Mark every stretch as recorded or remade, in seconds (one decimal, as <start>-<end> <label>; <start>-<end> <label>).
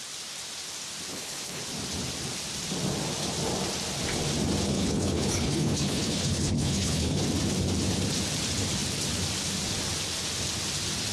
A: 0.0-1.1 recorded; 1.1-1.6 remade; 1.6-4.7 recorded; 4.7-7.2 remade; 7.2-11.1 recorded